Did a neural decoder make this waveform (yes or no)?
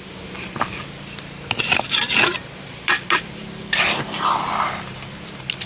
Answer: no